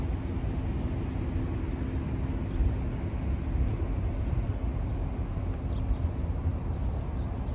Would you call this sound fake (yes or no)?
no